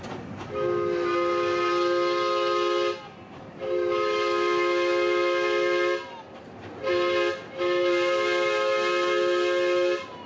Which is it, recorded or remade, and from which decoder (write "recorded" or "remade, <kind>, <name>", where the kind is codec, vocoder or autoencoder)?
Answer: recorded